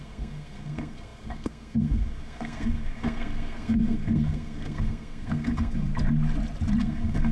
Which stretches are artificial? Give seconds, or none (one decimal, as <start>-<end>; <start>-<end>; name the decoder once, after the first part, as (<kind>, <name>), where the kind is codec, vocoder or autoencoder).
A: 0.0-5.9 (codec, SNAC); 6.8-7.3